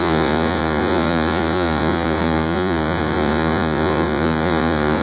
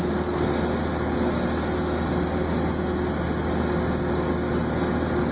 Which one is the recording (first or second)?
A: second